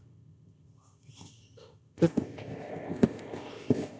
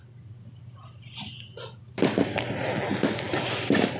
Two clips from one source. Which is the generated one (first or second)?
first